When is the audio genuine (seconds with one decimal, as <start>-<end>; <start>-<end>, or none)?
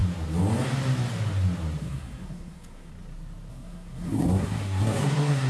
0.0-1.8; 2.9-3.5